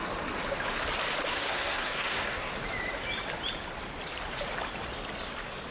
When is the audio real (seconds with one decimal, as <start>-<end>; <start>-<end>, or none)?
0.0-1.3; 2.5-5.7

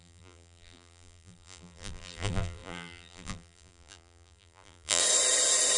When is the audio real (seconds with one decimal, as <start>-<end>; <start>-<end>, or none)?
5.0-5.8

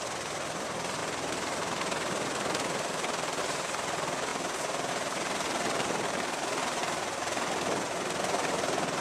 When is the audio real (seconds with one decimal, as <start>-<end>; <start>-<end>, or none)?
0.0-9.0

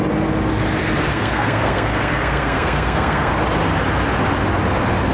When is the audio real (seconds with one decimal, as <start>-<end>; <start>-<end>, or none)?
0.0-1.1; 3.3-5.1

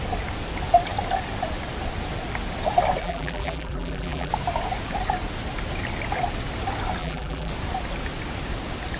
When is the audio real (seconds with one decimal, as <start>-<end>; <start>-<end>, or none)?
0.0-3.0; 4.3-7.0; 7.5-9.0

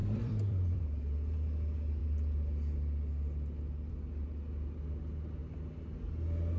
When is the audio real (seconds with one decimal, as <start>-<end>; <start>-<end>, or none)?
0.8-6.6

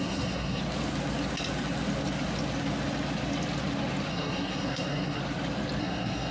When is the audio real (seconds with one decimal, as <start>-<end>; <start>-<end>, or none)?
0.6-4.1; 5.2-5.8

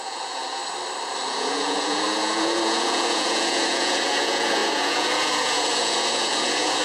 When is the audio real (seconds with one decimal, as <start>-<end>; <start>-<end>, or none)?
0.6-1.3